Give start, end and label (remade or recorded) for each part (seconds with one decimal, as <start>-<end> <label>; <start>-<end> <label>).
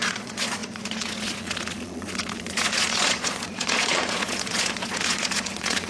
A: 0.0-5.9 remade